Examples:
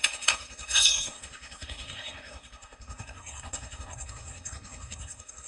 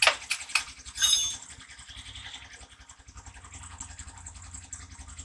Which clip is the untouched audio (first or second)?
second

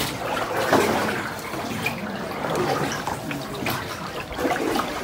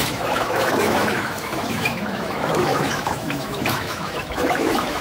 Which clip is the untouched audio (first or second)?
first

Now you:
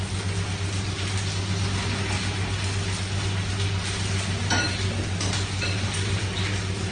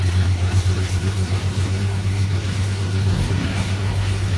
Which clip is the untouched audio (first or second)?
first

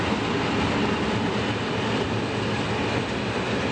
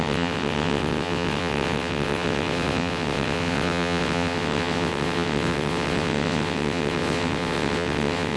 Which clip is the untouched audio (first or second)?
first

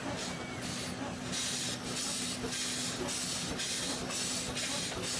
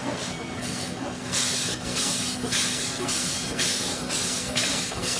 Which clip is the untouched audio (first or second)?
first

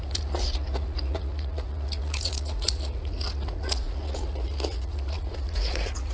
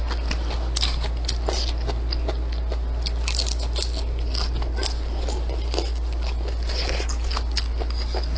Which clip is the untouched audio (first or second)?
second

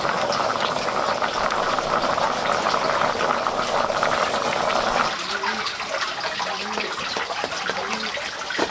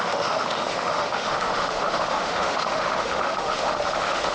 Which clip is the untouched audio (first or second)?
first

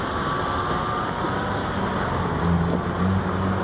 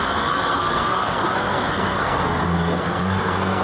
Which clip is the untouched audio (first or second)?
first